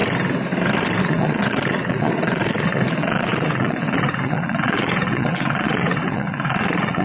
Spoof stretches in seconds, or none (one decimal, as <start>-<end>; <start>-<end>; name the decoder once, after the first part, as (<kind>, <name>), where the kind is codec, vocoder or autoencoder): 1.0-7.0 (vocoder, Vocos)